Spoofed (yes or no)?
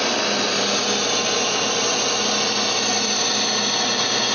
no